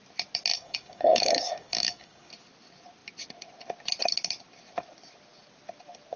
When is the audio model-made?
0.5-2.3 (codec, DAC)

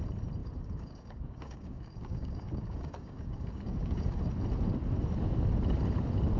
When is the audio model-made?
0.4-4.2 (codec, DAC)

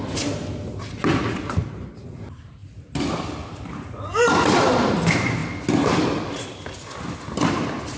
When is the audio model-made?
none